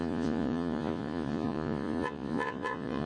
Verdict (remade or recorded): remade